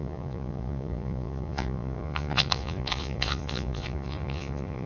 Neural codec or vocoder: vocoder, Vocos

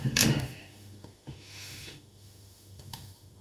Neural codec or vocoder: autoencoder, DAC-VAE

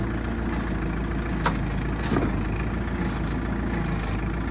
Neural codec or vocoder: none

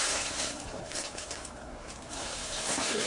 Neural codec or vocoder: codec, SNAC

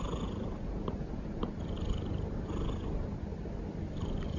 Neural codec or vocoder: none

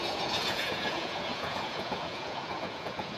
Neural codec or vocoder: vocoder, Vocos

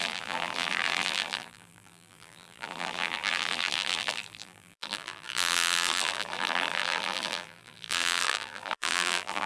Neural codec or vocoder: vocoder, BigVGAN v2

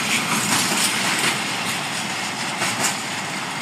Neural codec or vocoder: none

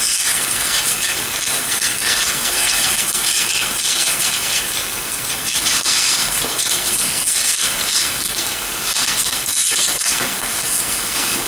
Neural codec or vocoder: codec, SNAC